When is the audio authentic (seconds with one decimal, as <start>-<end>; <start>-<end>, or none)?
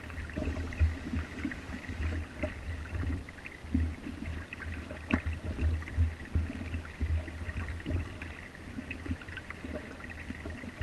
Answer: 0.0-10.8